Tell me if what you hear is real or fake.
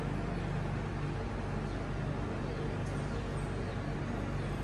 real